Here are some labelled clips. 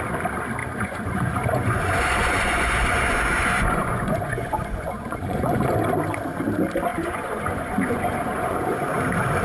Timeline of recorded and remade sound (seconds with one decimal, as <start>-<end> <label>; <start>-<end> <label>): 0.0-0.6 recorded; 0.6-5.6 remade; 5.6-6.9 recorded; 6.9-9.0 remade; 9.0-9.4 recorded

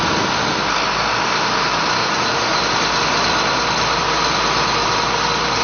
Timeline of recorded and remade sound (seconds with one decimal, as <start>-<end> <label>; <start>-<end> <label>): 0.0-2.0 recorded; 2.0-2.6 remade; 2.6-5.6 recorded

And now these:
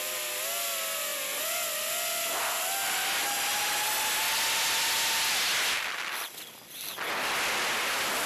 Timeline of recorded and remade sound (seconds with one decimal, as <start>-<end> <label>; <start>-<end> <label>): 0.0-8.3 recorded

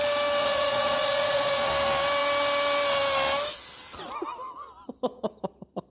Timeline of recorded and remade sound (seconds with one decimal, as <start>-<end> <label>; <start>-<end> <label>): 0.0-0.4 recorded; 0.4-1.7 remade; 1.7-5.9 recorded

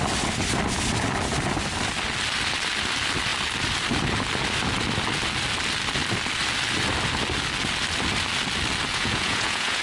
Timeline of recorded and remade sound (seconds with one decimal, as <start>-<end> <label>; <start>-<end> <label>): 0.0-8.9 recorded; 8.9-9.8 remade

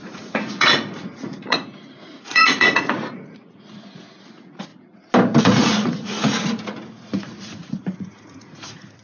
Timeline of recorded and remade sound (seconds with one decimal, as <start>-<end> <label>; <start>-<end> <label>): 0.0-4.7 remade; 4.7-5.4 recorded; 5.4-9.0 remade

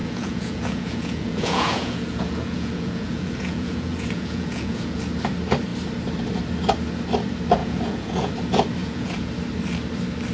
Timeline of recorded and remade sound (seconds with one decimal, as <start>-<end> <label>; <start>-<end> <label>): 0.0-5.0 remade; 5.0-7.6 recorded; 7.6-8.3 remade; 8.3-8.8 recorded; 8.8-9.3 remade; 9.3-10.3 recorded